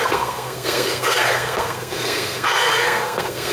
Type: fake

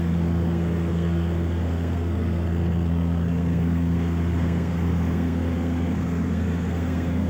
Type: fake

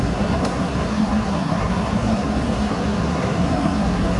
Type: fake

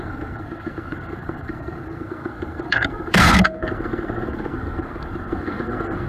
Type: fake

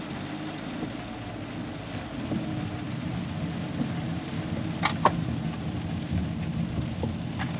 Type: real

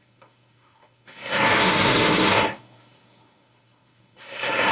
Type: fake